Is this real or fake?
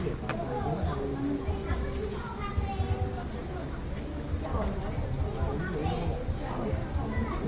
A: real